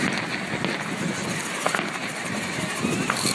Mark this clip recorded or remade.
recorded